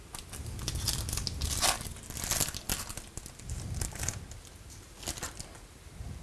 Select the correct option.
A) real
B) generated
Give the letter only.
A